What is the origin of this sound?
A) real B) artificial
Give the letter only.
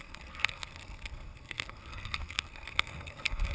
B